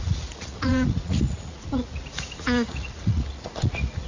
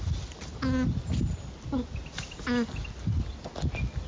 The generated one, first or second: first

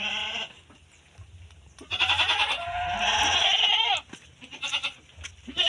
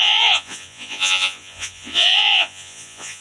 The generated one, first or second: second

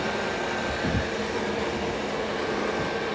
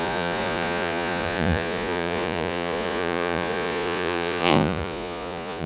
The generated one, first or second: second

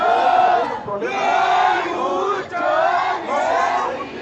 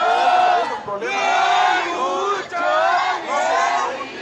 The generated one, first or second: first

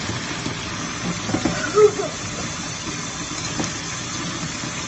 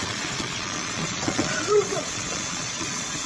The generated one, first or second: second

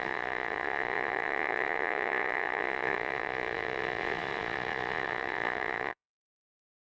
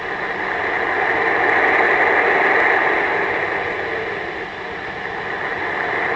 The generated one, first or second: first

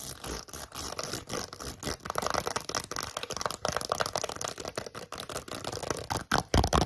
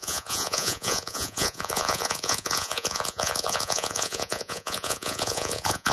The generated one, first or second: second